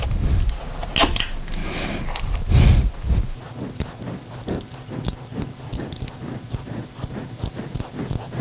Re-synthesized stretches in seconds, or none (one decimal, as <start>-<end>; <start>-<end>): none